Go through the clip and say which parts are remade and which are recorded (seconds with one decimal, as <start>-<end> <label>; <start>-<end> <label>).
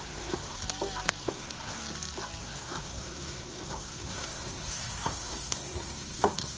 0.0-0.6 remade; 0.6-1.2 recorded; 1.2-1.8 remade; 1.8-2.4 recorded; 2.4-6.6 remade